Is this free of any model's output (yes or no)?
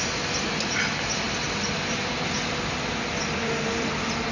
yes